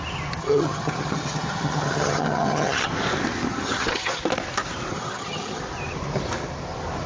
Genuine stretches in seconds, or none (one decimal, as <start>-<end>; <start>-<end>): 0.0-0.4; 2.9-3.5; 4.2-4.9; 5.6-7.1